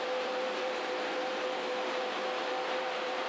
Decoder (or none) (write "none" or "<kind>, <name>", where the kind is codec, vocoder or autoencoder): vocoder, BigVGAN v2